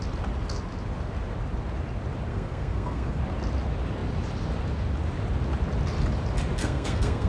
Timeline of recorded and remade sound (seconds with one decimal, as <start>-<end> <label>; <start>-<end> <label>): 0.0-2.3 recorded; 2.3-3.2 remade; 3.2-6.6 recorded; 6.6-7.3 remade

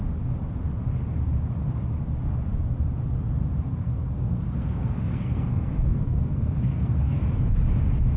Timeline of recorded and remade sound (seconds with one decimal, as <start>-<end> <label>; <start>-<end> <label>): 0.0-3.7 recorded; 3.7-7.2 remade; 7.2-8.2 recorded